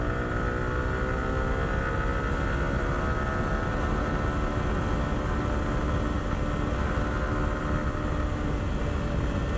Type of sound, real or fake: real